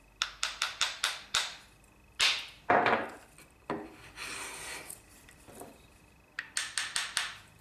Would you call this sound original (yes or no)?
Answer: yes